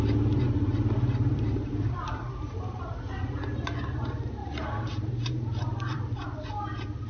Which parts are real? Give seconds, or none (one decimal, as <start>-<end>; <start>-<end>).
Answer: 0.0-1.2; 2.8-4.4; 6.3-7.1